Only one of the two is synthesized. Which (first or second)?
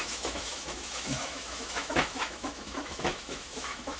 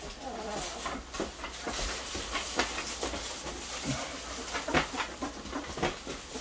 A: first